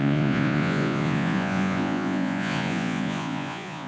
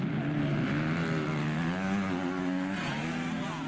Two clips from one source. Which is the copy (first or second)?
first